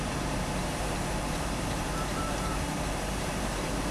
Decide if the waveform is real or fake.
fake